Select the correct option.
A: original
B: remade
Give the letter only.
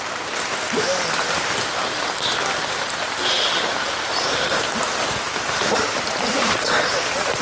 A